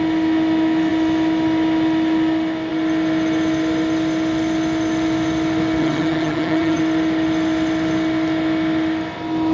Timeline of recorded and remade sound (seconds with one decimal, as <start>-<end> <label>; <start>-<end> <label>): 0.0-5.8 recorded; 5.8-6.8 remade; 6.8-9.5 recorded